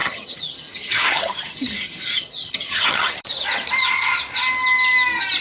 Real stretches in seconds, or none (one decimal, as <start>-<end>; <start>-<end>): 3.2-5.4